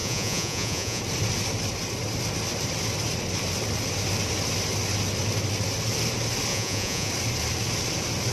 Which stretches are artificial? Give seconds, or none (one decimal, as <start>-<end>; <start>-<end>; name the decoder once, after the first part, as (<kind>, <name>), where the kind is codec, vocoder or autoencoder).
0.0-1.0 (vocoder, Vocos); 6.5-7.1